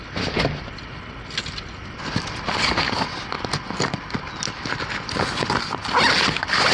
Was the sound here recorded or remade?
recorded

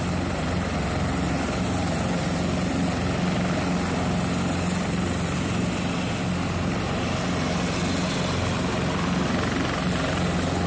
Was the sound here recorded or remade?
recorded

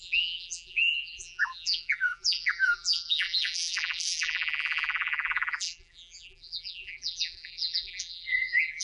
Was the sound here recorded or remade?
remade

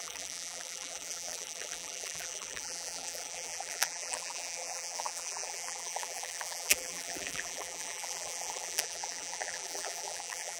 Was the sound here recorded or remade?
remade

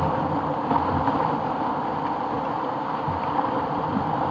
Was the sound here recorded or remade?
recorded